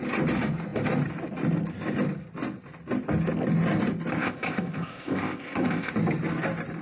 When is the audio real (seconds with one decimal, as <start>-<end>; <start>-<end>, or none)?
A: 0.0-4.2; 5.9-6.8